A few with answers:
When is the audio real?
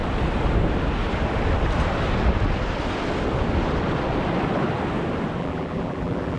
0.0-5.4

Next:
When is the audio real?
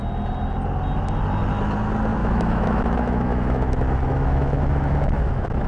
0.0-2.2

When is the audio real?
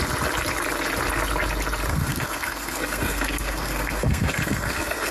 0.0-1.9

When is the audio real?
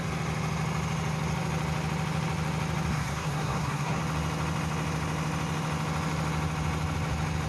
0.0-2.9; 4.0-7.5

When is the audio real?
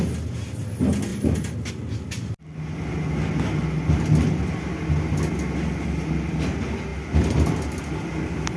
0.0-8.6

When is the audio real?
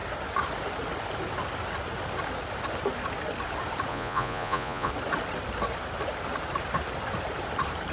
0.0-3.9; 4.9-7.9